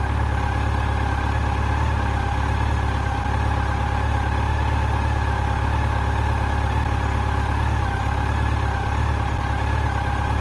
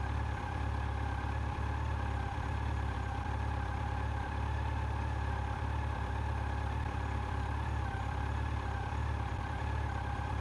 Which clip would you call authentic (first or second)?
first